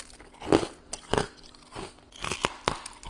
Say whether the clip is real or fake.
real